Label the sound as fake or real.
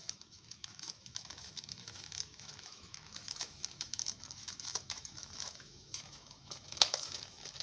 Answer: fake